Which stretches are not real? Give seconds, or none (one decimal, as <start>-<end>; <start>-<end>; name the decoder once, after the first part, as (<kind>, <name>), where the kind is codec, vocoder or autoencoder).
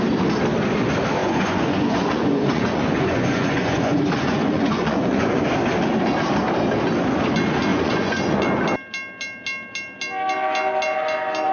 1.2-5.4 (vocoder, Vocos); 7.7-8.6